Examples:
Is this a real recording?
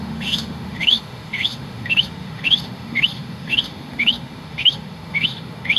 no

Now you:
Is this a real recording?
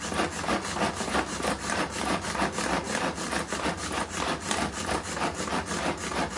yes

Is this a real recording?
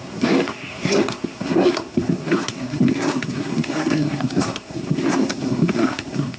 no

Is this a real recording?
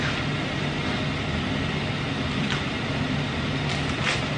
yes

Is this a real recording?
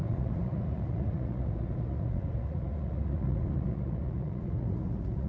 no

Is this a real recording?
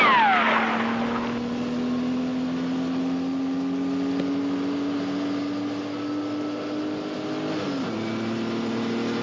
yes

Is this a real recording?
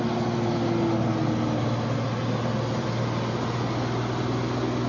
yes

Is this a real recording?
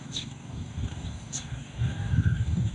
no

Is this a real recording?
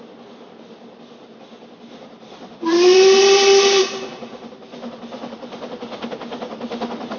yes